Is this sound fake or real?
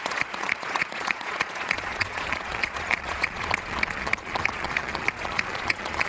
fake